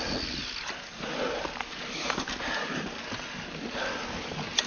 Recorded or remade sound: recorded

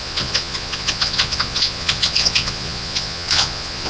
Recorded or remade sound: remade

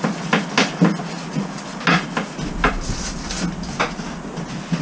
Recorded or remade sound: recorded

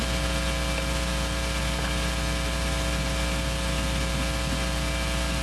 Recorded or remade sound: recorded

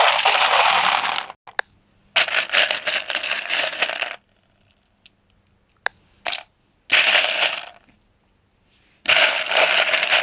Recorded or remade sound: recorded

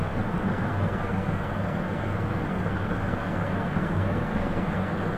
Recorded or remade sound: remade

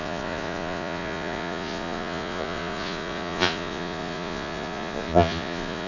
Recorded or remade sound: remade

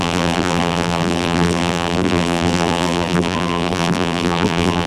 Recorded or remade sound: remade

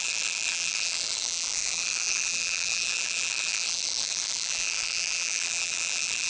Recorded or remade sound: remade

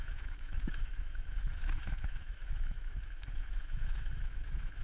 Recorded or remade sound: remade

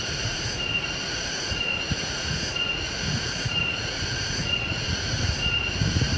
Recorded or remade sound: remade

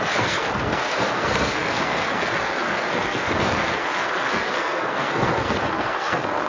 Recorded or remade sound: remade